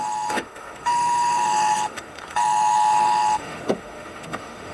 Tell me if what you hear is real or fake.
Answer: fake